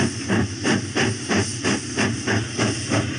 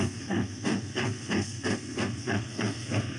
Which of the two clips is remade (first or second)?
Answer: second